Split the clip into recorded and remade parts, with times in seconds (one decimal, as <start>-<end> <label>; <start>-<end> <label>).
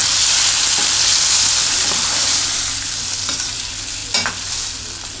0.0-4.0 remade; 4.0-5.2 recorded